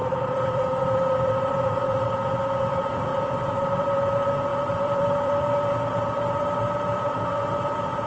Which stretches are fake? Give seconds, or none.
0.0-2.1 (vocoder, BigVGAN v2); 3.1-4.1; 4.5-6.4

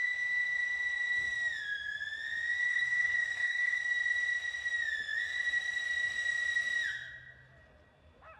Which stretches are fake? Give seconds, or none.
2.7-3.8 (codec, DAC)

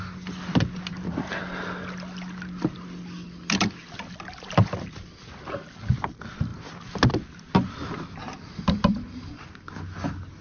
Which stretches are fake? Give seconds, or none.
none